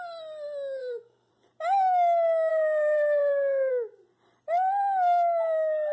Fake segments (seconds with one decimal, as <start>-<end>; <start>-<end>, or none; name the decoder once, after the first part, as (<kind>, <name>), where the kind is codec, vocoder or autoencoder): 0.8-1.3 (codec, SNAC); 2.5-3.7

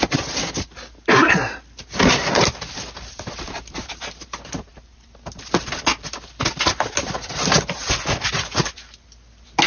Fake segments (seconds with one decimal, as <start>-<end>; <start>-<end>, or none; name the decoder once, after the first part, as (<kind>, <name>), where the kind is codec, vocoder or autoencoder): none

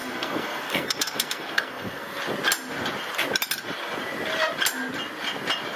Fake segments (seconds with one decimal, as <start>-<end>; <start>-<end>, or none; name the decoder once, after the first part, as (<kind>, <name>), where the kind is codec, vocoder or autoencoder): 0.0-2.2 (codec, SNAC)

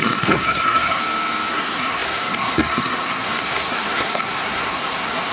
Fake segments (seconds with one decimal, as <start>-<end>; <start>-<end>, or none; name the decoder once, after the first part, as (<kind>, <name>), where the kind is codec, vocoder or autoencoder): 0.0-1.0 (codec, SNAC); 1.5-5.3

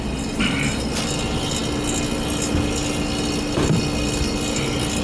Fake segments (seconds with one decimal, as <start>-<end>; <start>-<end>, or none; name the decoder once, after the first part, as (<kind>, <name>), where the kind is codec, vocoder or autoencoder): none

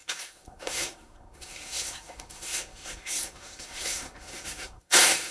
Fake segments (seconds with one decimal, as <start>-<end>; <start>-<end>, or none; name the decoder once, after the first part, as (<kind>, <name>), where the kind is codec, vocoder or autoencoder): 0.0-5.3 (codec, SNAC)